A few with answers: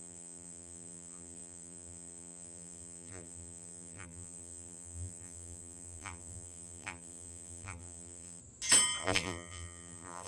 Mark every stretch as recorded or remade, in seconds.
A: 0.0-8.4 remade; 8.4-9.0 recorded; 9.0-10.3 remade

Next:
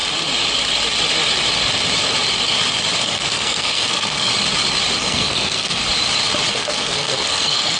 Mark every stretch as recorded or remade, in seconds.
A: 0.0-3.0 recorded; 3.0-4.3 remade; 4.3-5.0 recorded; 5.0-5.8 remade; 5.8-6.5 recorded; 6.5-7.8 remade

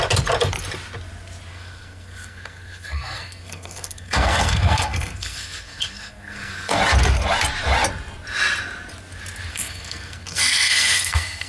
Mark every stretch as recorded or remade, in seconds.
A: 0.0-1.5 recorded; 1.5-6.8 remade; 6.8-9.5 recorded; 9.5-11.5 remade